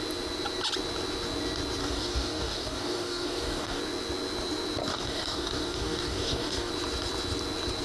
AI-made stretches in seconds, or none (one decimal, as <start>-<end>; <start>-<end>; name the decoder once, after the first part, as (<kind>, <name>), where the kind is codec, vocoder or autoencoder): 1.8-3.8 (codec, DAC); 4.9-6.7